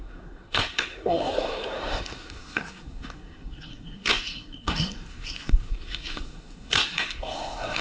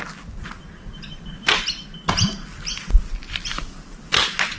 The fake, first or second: first